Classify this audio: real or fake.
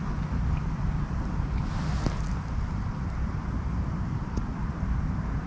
real